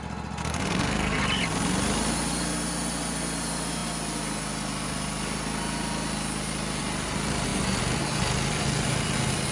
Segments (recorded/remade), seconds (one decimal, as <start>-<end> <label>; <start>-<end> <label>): 0.0-0.5 recorded; 0.5-1.2 remade; 1.2-9.5 recorded